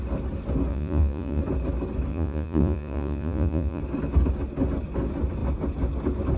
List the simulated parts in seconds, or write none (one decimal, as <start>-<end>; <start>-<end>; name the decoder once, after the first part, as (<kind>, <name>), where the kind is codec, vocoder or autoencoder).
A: 0.7-1.4 (vocoder, Vocos); 2.1-3.8